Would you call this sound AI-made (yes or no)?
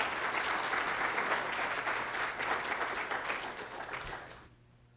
no